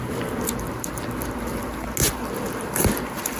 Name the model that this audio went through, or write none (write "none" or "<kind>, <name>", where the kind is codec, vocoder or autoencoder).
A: none